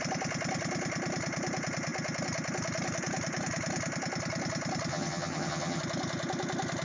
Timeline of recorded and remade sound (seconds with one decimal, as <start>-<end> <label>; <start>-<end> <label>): 0.0-4.9 recorded; 4.9-5.8 remade; 5.8-6.8 recorded